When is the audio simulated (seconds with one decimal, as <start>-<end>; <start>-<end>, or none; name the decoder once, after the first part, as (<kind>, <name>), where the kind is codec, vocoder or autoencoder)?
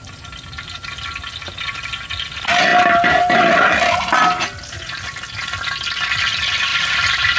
6.7-7.4 (vocoder, BigVGAN v2)